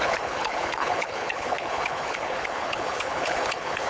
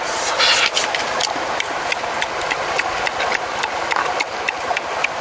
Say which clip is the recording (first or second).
second